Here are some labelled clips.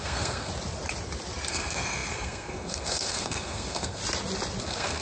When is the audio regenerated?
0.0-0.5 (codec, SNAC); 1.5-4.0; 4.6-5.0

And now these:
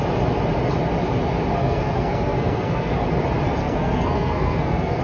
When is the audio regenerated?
1.6-2.9 (codec, SNAC); 3.6-5.0

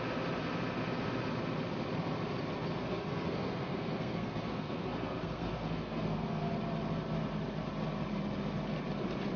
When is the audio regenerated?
2.8-6.6 (codec, SNAC)

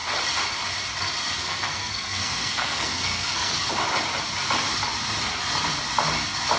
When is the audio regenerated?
1.4-3.6 (codec, SNAC)

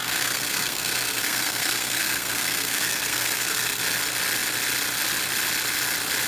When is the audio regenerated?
0.0-3.8 (codec, SNAC)

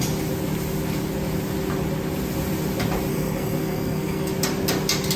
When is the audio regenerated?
3.1-4.3 (codec, SNAC)

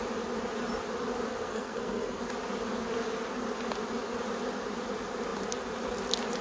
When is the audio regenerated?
1.3-2.2 (codec, SNAC)

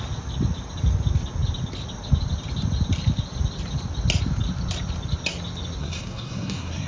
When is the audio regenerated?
5.8-6.9 (codec, SNAC)